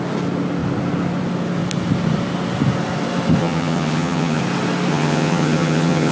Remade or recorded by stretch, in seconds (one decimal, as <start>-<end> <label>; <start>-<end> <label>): 0.0-3.4 recorded; 3.4-4.4 remade; 4.4-4.9 recorded; 4.9-6.1 remade